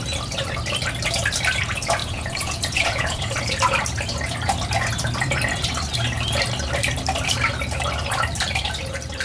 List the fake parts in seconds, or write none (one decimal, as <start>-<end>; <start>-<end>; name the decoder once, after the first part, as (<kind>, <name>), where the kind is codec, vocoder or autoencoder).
2.0-3.4 (vocoder, Vocos)